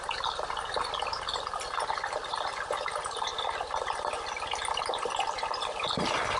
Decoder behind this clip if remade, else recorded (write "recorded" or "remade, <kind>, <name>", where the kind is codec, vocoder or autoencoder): recorded